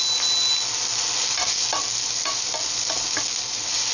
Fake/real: real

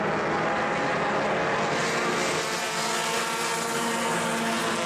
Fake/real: real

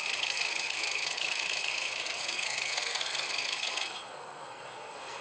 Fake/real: fake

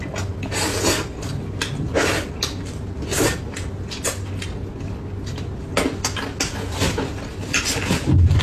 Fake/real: real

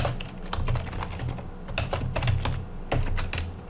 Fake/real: real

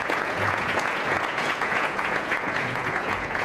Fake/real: fake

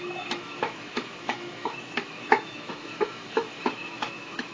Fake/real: fake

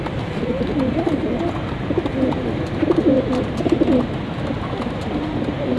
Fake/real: real